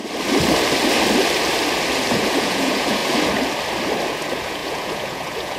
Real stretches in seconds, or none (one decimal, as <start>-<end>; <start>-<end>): 0.0-2.1; 3.0-4.1